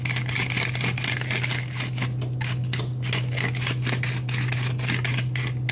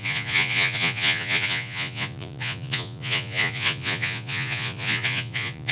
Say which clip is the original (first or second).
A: first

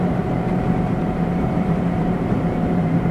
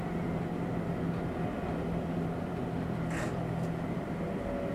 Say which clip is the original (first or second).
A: second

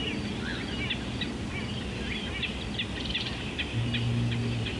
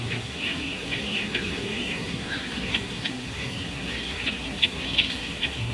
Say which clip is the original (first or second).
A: first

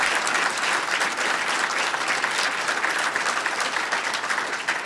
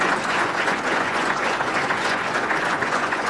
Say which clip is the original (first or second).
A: first